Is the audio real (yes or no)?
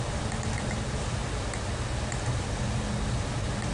yes